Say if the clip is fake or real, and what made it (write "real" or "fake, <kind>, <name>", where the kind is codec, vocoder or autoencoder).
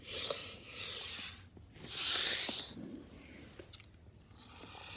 real